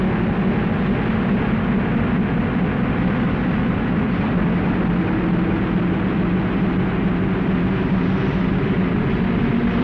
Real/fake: real